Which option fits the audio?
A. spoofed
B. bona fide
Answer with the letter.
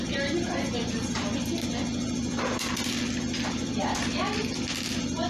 B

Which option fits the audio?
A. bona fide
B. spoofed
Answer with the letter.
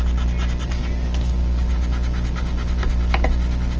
A